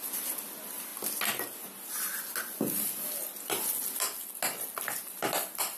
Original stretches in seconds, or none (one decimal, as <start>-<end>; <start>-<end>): 0.0-5.8